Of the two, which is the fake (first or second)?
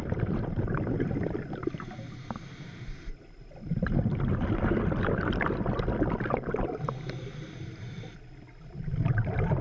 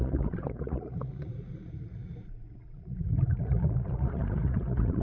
second